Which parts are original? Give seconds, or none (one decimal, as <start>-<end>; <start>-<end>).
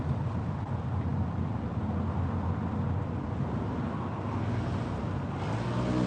0.0-6.1